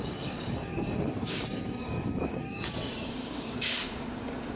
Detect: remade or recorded remade